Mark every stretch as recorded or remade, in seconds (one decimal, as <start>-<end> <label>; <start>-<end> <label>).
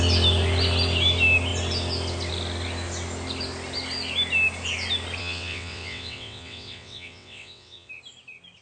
0.0-5.2 recorded; 5.2-7.9 remade; 7.9-8.6 recorded